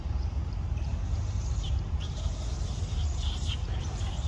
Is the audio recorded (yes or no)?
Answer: no